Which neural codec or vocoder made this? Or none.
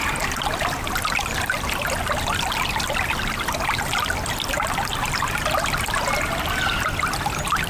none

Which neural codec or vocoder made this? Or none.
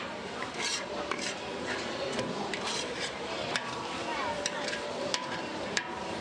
vocoder, BigVGAN v2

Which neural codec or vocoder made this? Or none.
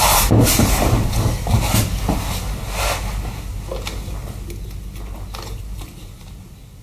none